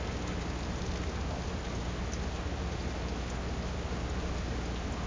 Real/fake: real